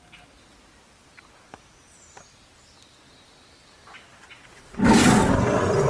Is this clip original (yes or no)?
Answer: yes